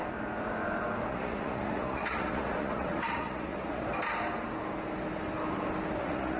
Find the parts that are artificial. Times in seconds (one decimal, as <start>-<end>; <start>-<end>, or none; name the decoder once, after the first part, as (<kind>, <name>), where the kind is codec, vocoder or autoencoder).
1.1-3.8 (vocoder, Vocos); 6.0-6.4